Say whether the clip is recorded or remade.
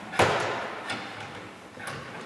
recorded